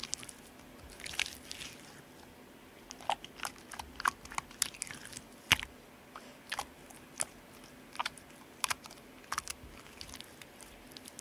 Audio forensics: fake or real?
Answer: real